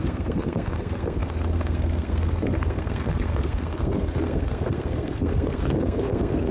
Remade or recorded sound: remade